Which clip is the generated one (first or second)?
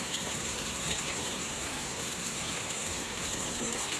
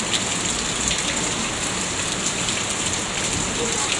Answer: first